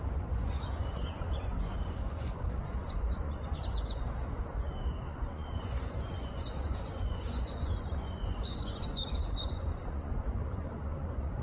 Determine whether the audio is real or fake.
fake